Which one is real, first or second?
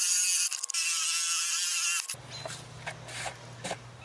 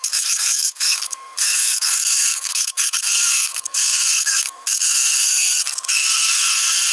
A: first